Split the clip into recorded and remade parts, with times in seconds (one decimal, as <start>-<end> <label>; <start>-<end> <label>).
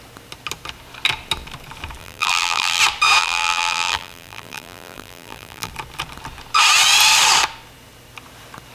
0.0-2.0 recorded; 2.0-2.8 remade; 2.8-3.2 recorded; 3.2-5.7 remade; 5.7-8.7 recorded